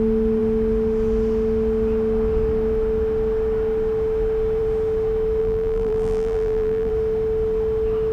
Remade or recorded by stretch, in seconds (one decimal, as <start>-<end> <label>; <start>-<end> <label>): 0.0-5.4 recorded; 5.4-6.9 remade; 6.9-8.1 recorded